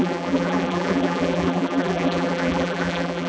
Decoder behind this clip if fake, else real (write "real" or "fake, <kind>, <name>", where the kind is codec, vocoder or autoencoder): fake, vocoder, BigVGAN v2